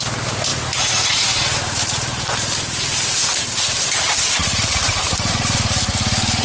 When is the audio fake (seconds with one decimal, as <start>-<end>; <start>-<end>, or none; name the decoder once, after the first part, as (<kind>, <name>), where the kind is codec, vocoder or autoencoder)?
0.5-3.8 (vocoder, BigVGAN v2); 4.4-5.3